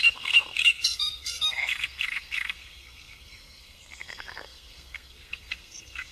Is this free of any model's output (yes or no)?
no